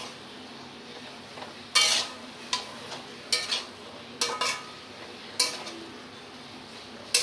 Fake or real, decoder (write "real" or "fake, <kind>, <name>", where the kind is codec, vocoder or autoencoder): real